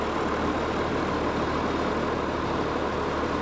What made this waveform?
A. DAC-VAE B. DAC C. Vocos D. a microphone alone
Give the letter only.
D